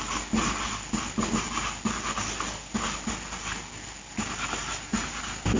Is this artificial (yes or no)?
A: no